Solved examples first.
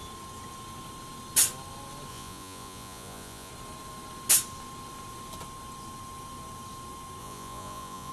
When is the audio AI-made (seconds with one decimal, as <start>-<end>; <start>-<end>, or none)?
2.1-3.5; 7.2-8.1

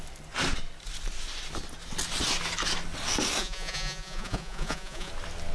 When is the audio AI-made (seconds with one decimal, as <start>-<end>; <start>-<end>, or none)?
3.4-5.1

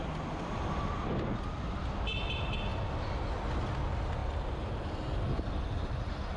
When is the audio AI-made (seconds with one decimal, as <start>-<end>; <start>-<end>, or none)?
none

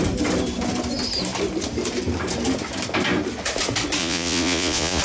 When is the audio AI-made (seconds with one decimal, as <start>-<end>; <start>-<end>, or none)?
4.0-5.0

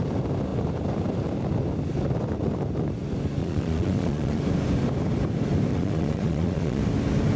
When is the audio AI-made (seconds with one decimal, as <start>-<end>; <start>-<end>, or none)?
3.4-4.4; 5.7-6.8